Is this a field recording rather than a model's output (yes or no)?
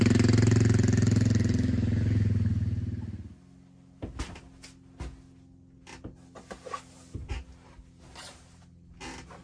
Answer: yes